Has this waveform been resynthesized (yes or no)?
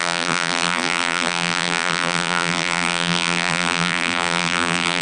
yes